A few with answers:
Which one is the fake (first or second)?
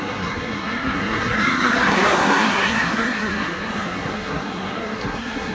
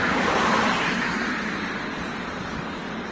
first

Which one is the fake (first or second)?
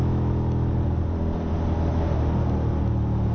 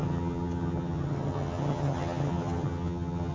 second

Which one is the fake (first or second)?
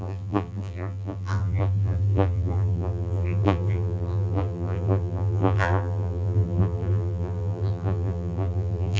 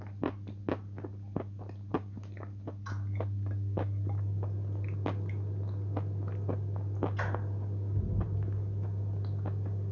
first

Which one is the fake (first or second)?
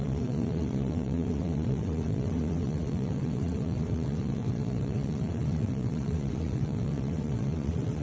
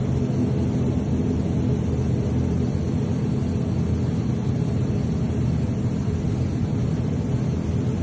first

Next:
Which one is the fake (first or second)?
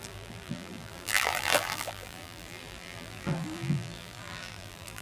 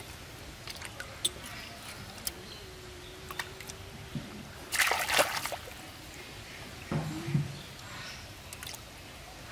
first